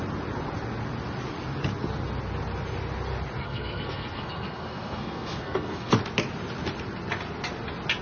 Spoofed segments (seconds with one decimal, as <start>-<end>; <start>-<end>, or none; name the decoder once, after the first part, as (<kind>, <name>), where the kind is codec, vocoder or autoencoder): 3.4-5.9 (codec, SNAC)